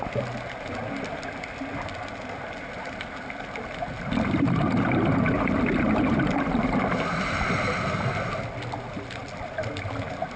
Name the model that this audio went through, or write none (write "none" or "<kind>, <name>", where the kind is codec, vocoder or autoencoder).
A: none